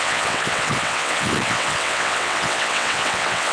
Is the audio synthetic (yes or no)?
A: yes